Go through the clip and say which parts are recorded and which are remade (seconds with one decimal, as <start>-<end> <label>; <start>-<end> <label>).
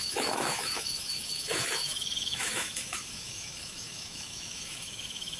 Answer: 0.0-5.4 remade